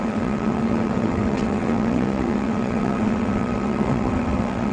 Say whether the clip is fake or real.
fake